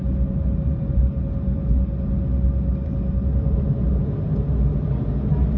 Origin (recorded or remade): recorded